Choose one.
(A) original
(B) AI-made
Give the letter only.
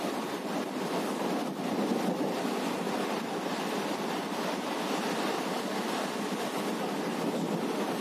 B